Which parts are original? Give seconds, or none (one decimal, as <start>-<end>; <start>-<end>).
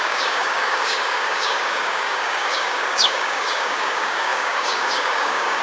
none